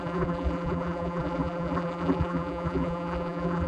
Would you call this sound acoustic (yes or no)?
no